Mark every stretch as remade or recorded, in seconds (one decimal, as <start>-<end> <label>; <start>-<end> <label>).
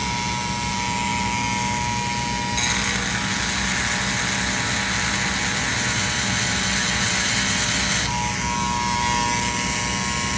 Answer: 0.0-10.4 recorded